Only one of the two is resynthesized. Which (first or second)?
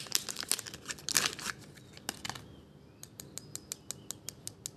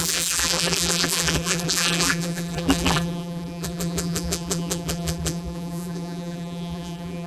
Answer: second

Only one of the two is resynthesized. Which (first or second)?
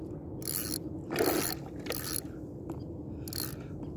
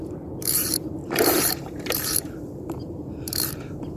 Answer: second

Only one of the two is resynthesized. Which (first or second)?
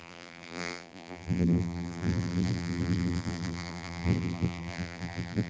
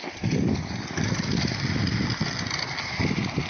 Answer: first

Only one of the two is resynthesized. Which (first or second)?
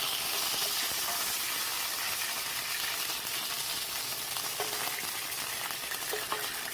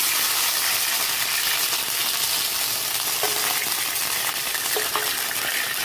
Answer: first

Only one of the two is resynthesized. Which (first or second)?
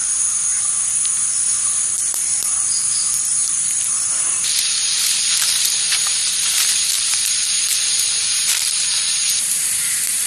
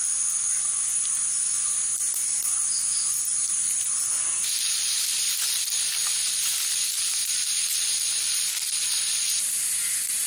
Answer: first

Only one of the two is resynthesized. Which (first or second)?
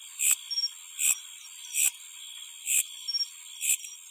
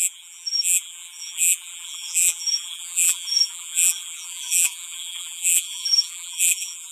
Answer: second